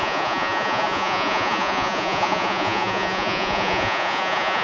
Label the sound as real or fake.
fake